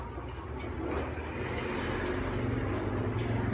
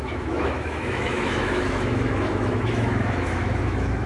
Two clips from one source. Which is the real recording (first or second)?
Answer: first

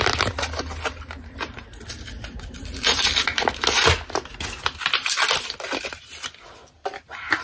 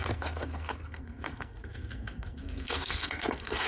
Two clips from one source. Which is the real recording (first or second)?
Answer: first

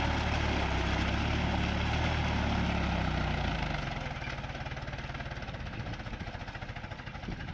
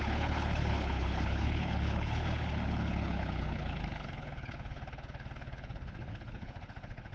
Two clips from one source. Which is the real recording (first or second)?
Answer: first